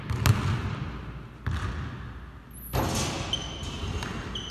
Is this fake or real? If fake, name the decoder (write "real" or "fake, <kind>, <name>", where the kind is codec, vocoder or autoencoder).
real